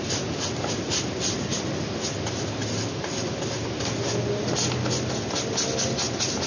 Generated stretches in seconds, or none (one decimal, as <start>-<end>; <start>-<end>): none